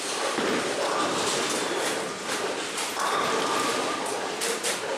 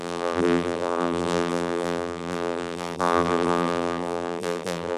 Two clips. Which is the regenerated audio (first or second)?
second